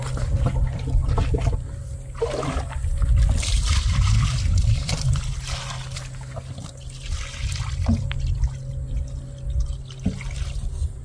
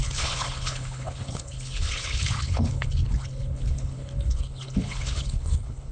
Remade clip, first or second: second